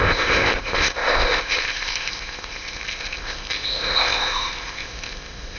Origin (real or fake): fake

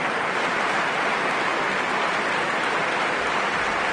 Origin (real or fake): real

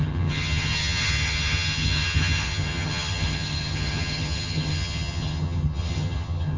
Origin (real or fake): fake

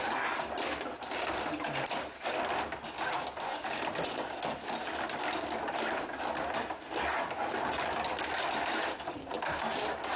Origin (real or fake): real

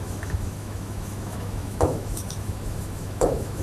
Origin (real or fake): fake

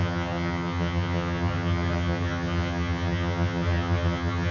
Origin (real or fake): fake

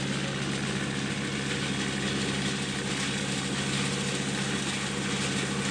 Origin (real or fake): real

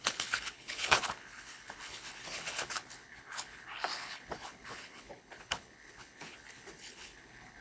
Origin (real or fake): fake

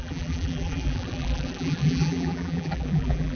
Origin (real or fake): fake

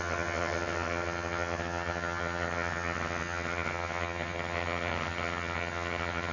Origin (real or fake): fake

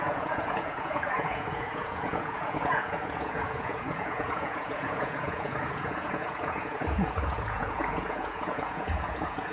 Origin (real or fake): fake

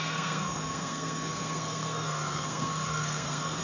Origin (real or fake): fake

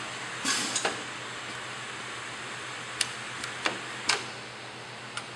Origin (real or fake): real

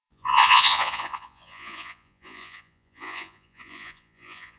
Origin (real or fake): fake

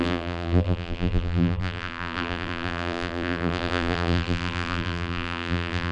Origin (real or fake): fake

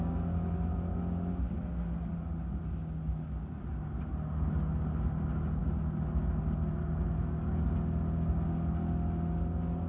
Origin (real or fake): real